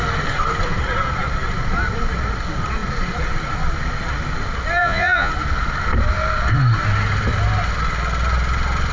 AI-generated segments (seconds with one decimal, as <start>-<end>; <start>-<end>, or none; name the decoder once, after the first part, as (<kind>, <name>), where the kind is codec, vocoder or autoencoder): 4.8-5.3 (vocoder, Vocos)